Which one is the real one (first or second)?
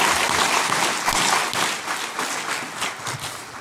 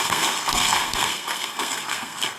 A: first